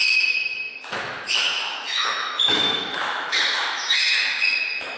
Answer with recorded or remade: remade